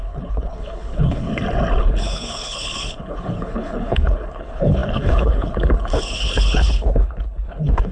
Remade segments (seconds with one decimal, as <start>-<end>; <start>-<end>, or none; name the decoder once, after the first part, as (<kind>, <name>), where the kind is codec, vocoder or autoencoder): 0.0-1.3 (codec, HILCodec); 1.8-7.9